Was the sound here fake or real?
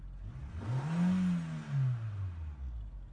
real